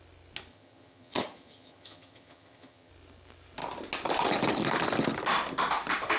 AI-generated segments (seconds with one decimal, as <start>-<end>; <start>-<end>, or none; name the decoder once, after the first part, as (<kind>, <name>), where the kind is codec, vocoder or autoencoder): 0.5-2.9 (vocoder, HiFi-GAN)

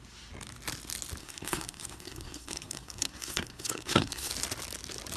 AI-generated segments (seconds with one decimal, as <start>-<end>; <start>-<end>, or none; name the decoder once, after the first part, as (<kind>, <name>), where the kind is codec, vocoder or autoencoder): 1.2-4.3 (codec, SNAC)

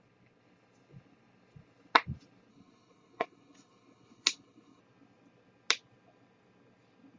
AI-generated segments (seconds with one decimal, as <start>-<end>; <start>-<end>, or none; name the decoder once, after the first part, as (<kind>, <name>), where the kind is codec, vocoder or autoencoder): 2.5-4.8 (codec, HILCodec)

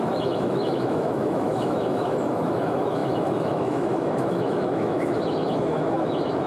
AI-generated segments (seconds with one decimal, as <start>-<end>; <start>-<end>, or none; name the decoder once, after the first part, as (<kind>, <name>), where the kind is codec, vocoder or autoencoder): 0.0-6.5 (autoencoder, DAC-VAE)

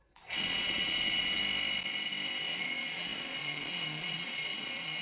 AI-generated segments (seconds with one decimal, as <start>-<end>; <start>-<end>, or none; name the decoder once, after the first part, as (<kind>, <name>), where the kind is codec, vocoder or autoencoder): 0.0-1.4 (vocoder, Vocos); 2.4-5.0